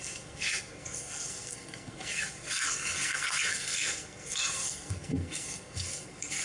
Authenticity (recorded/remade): remade